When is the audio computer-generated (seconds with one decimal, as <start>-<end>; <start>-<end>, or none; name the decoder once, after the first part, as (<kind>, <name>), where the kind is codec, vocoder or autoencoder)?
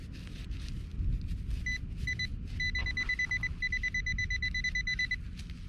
none